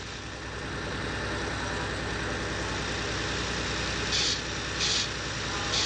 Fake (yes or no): no